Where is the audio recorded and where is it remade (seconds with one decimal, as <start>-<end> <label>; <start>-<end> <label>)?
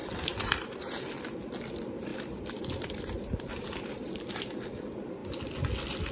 0.0-1.0 remade; 1.0-2.1 recorded; 2.1-4.3 remade; 4.3-6.1 recorded